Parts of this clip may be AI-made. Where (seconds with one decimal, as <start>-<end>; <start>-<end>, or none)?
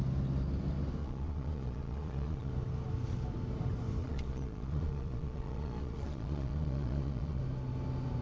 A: 1.0-2.5; 4.0-7.4